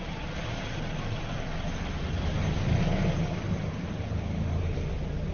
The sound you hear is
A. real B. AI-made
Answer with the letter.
A